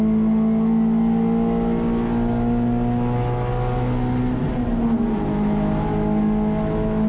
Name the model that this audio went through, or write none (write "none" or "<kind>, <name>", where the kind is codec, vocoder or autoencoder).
none